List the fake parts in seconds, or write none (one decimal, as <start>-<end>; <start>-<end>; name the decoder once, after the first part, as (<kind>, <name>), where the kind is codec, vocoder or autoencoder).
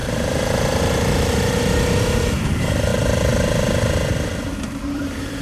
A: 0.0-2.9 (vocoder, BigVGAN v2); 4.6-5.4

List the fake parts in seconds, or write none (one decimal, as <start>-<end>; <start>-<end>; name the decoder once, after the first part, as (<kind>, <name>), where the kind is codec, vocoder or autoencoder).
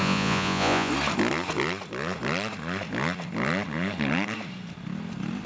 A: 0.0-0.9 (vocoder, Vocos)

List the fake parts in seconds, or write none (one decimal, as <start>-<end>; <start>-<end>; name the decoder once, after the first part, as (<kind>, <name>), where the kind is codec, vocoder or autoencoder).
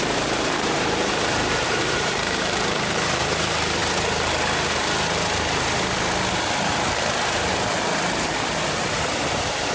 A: 0.0-3.8 (vocoder, BigVGAN v2); 8.7-9.7